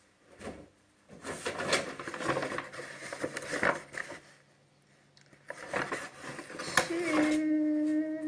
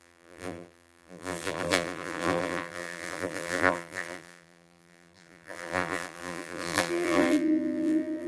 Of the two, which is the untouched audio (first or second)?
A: first